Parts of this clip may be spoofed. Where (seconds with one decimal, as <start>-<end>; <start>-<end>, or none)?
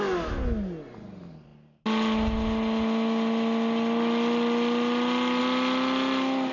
none